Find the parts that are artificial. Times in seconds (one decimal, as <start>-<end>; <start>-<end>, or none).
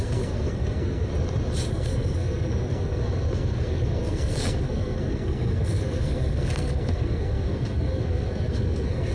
0.0-1.1; 1.7-9.1